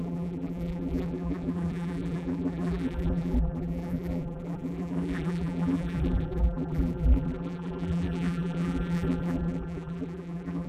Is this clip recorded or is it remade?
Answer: remade